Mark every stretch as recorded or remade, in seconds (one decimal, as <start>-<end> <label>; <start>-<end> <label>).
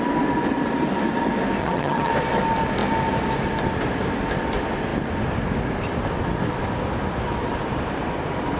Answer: 0.0-1.6 recorded; 1.6-2.1 remade; 2.1-8.6 recorded